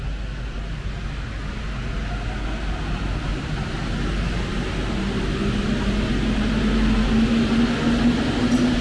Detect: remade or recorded recorded